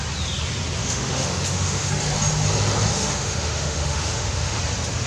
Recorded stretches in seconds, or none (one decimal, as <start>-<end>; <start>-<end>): 0.0-0.8; 1.9-2.9; 4.6-5.1